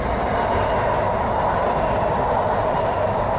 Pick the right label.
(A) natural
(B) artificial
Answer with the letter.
A